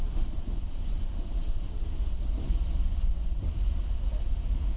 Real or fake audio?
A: fake